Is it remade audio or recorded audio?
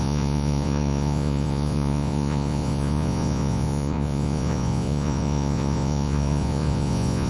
remade